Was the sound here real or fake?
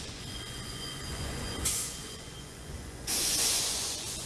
fake